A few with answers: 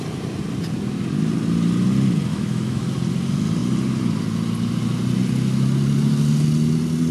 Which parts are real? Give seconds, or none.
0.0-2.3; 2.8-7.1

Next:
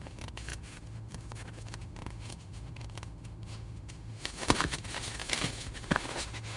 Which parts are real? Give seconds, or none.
none

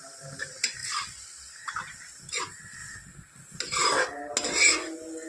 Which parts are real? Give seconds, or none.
0.0-5.3